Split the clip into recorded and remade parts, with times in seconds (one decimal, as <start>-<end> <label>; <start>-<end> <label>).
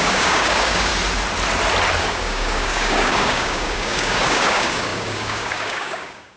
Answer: 0.0-0.9 remade; 0.9-2.0 recorded; 2.0-6.4 remade